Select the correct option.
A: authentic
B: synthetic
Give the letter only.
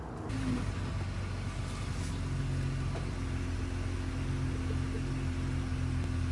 A